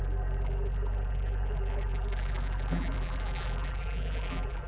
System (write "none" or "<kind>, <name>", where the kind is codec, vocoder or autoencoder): vocoder, BigVGAN v2